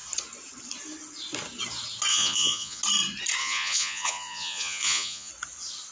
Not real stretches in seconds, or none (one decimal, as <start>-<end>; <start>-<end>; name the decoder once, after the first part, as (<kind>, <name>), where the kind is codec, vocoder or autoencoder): 2.1-2.8 (vocoder, Vocos); 3.4-5.3